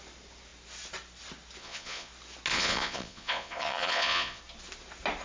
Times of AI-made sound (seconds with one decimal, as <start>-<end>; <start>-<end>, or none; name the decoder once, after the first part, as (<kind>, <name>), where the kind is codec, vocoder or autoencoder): 1.6-2.1 (vocoder, Vocos); 2.5-4.4

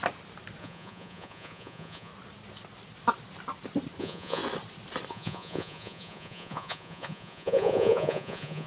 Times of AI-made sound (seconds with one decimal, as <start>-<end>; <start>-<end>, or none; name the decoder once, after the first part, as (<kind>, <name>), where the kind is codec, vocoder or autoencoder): 0.6-2.1 (vocoder, Vocos); 4.0-4.4; 5.1-8.7

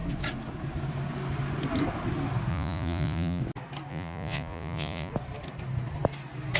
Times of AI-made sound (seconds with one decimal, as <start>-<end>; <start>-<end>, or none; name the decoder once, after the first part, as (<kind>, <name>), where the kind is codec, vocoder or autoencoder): 2.5-3.4 (vocoder, Vocos); 3.9-5.1